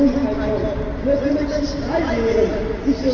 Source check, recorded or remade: recorded